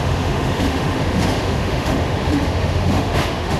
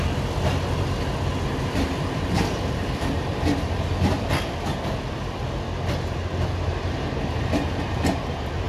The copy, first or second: first